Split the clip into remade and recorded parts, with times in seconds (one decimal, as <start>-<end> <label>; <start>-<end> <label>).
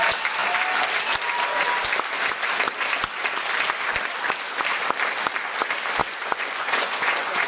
0.0-6.0 recorded; 6.0-7.5 remade